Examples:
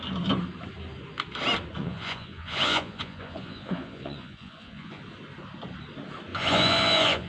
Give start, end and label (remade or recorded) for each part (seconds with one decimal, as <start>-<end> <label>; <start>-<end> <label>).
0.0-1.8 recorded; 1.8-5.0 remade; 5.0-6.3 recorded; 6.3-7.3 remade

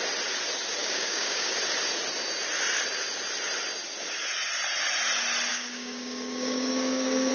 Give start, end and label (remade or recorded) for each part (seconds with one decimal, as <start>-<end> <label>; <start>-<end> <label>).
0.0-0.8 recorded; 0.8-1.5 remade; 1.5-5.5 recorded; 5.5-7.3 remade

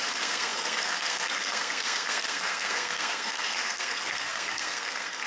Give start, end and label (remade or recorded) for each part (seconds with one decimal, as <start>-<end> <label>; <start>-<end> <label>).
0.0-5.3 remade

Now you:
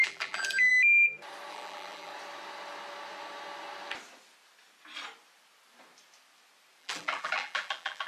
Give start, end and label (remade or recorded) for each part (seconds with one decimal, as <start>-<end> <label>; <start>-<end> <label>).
0.0-0.7 remade; 0.7-1.5 recorded; 1.5-2.1 remade; 2.1-6.8 recorded; 6.8-8.1 remade

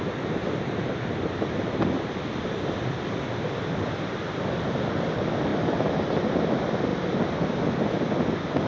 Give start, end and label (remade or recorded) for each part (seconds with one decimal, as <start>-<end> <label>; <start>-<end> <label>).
0.0-8.7 recorded